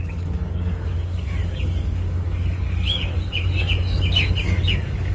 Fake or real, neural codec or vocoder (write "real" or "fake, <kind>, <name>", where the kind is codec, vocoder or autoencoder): fake, codec, DAC